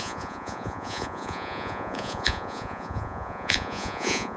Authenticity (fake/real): fake